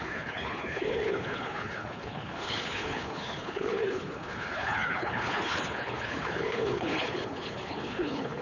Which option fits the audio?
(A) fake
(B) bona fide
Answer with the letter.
A